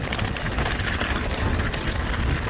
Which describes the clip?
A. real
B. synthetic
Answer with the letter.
A